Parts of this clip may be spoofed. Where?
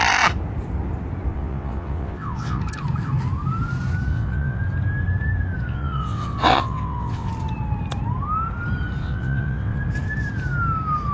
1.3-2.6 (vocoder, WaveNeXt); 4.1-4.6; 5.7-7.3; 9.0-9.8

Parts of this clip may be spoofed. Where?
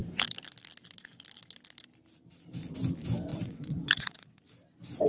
3.3-4.4 (vocoder, WaveNeXt)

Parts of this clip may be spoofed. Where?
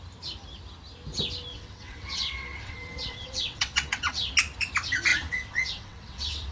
1.5-4.3 (vocoder, WaveNeXt); 5.1-6.5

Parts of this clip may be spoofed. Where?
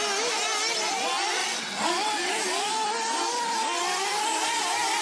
1.4-1.9 (vocoder, WaveNeXt)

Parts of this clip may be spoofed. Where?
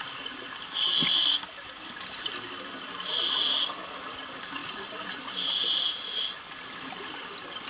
none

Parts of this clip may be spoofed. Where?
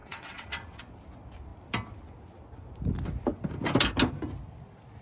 0.0-0.8 (vocoder, WaveNeXt)